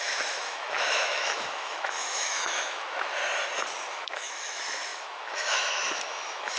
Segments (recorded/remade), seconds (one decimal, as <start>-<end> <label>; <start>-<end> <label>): 0.0-3.2 remade; 3.2-3.9 recorded; 3.9-6.6 remade